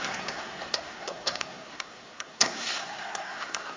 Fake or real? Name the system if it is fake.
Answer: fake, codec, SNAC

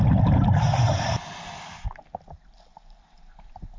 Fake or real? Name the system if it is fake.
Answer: real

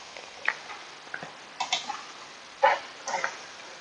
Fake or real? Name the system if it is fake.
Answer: real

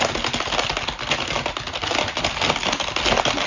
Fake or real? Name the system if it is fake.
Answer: real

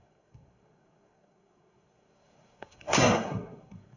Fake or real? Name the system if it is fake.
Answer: fake, codec, SNAC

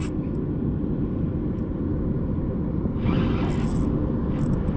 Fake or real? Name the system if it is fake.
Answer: real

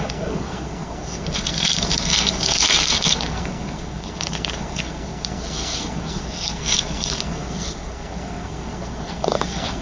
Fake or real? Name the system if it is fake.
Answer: fake, codec, SNAC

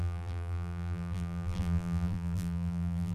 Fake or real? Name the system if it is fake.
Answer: fake, vocoder, BigVGAN v2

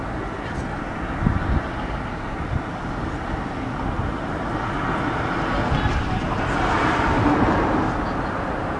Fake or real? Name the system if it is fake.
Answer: real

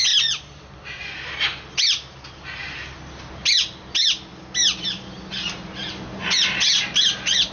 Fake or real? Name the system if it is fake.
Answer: real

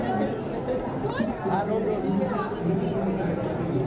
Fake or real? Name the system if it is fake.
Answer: real